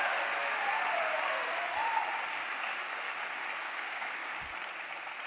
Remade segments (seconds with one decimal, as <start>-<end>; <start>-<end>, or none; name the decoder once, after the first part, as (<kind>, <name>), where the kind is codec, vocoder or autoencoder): 2.5-3.1 (codec, DAC); 3.6-4.5